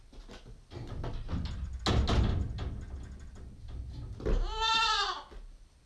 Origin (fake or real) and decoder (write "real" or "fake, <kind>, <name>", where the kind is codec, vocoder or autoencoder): real